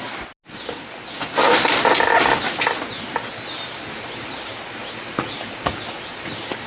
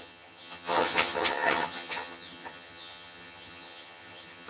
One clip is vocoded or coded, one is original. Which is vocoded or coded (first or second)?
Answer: second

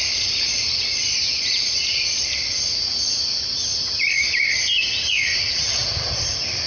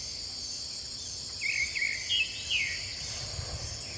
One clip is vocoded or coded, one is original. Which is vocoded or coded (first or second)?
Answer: first